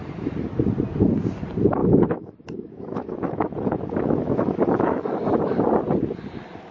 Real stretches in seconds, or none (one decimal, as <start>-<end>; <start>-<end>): 0.0-1.8; 5.4-6.7